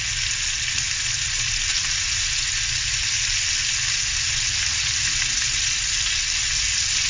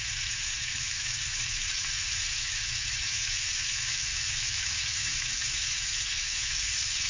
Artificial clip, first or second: second